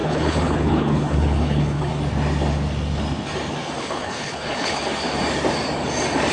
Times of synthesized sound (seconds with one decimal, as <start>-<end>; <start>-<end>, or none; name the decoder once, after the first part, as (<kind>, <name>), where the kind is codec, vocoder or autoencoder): 0.0-1.9 (codec, HILCodec); 3.8-4.8